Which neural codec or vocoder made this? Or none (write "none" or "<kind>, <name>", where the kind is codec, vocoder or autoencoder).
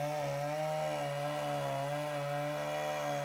none